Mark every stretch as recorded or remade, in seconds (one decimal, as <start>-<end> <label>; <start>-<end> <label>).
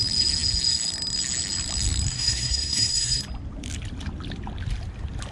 0.0-2.1 recorded; 2.1-3.2 remade; 3.2-5.3 recorded